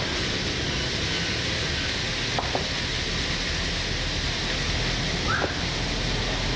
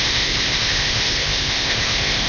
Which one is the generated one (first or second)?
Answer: second